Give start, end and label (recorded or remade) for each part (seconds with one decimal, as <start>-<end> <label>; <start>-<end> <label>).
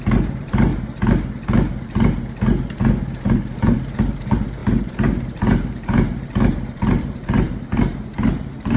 0.0-0.7 remade; 0.7-2.8 recorded; 2.8-8.8 remade